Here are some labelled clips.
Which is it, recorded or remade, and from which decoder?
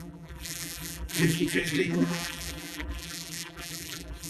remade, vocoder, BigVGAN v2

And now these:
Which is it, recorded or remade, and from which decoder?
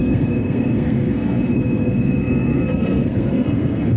remade, codec, SNAC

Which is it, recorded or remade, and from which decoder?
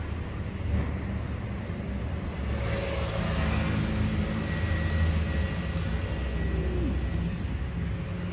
recorded